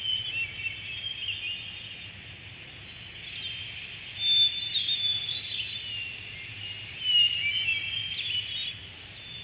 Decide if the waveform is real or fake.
real